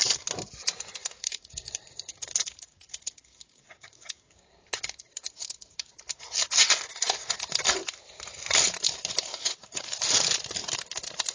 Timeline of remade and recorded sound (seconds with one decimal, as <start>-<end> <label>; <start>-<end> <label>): 0.0-1.0 recorded; 1.0-5.9 remade; 5.9-9.3 recorded; 9.3-10.0 remade; 10.0-11.3 recorded